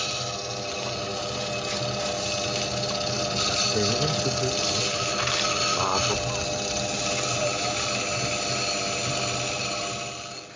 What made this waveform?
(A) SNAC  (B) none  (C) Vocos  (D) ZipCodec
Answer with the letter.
B